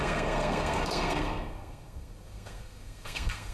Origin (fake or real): fake